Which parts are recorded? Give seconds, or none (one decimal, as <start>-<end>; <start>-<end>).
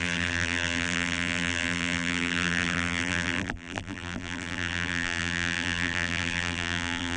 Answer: none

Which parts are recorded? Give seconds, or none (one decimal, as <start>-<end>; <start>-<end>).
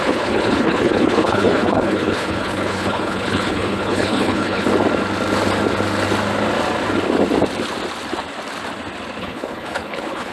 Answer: 4.7-9.2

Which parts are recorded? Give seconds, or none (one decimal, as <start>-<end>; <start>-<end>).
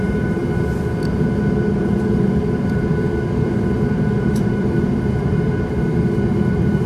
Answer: 0.4-1.7; 2.9-3.4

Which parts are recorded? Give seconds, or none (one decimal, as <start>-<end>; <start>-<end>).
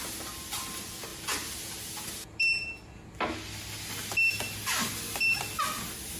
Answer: 0.0-6.2